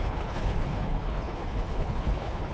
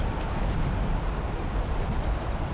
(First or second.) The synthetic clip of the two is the first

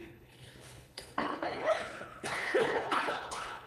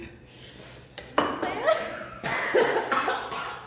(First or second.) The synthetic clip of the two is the first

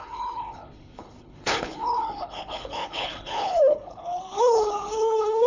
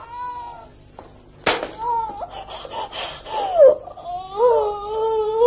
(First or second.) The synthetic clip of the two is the first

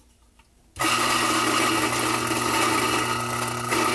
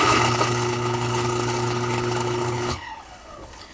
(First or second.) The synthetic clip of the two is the second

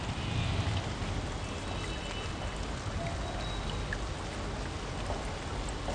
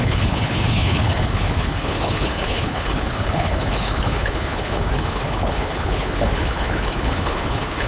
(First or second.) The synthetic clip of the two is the second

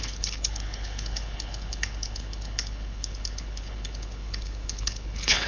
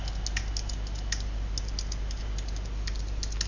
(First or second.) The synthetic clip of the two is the first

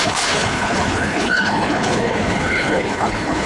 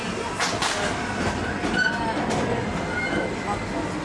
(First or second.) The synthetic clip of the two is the first